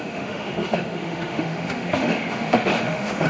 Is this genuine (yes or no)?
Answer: no